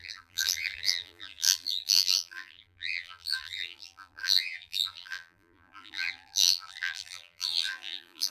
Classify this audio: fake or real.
fake